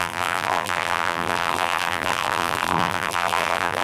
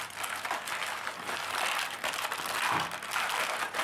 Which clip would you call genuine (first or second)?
second